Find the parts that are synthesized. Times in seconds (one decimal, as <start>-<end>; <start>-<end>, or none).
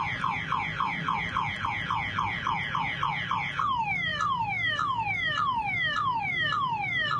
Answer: none